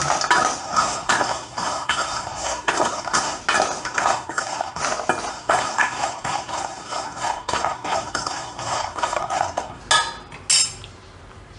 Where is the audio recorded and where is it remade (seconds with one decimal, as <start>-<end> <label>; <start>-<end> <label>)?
0.0-0.6 recorded; 0.6-3.4 remade; 3.4-3.8 recorded; 3.8-4.8 remade; 4.8-5.3 recorded; 5.3-9.8 remade; 9.8-11.6 recorded